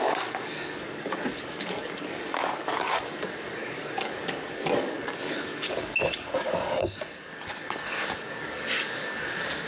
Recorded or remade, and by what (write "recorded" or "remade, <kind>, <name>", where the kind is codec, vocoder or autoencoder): remade, codec, DAC